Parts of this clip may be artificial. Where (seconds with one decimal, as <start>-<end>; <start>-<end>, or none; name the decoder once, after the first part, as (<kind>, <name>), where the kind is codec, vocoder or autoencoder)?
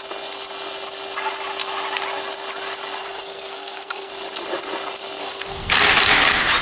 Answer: 3.0-4.1 (codec, SNAC); 5.2-5.7